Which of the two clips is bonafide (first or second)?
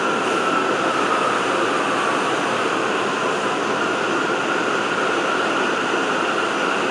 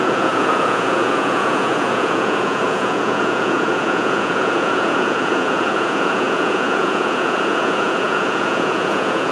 first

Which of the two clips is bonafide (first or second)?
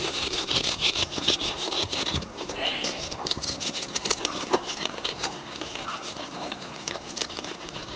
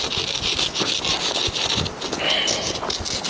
second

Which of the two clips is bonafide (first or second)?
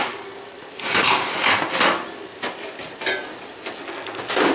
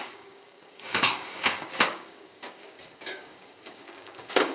first